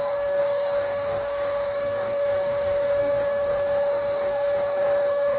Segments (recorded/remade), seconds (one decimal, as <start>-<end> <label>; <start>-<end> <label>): 0.0-5.4 remade